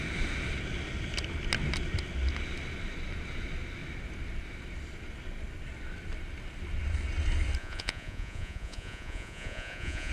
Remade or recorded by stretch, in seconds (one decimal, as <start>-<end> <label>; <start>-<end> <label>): 0.0-7.6 recorded; 7.6-10.1 remade